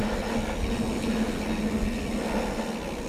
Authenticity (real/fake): real